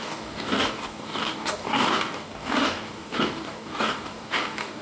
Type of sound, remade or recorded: remade